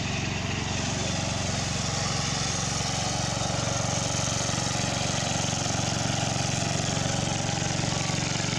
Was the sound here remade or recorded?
recorded